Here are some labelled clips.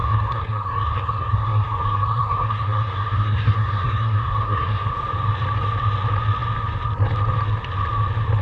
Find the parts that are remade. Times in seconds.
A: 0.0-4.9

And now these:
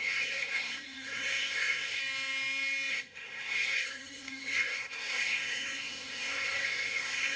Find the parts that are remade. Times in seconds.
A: 0.0-2.0; 2.9-7.4

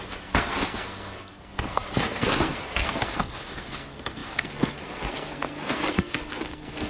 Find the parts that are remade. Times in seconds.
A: 0.0-6.9

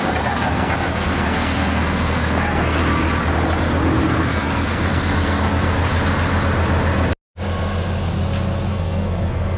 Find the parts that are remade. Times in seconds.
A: 0.0-2.8; 4.0-5.8; 8.7-9.6

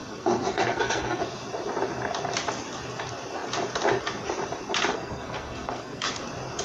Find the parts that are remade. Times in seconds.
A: 0.0-1.2; 4.9-6.1

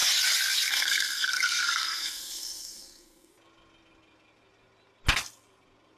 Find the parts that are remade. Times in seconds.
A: 0.7-3.3

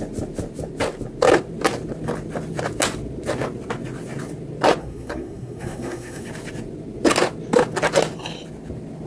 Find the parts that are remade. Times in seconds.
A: 4.8-6.3

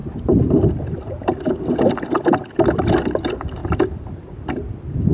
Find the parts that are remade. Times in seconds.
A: none